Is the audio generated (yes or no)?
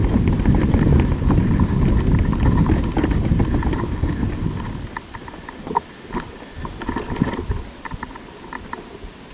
no